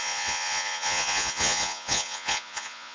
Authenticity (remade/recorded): remade